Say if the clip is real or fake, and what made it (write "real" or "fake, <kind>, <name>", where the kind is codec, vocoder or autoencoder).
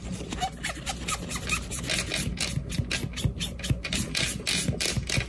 real